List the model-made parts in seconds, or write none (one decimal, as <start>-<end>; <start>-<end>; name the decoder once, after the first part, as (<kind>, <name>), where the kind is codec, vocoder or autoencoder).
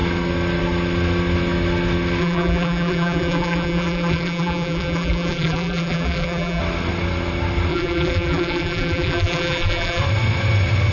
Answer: 2.2-6.6 (vocoder, BigVGAN v2); 7.7-10.0